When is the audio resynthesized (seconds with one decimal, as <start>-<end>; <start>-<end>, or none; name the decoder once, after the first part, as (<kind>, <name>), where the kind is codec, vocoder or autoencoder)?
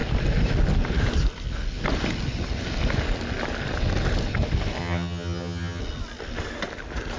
4.8-5.8 (vocoder, HiFi-GAN)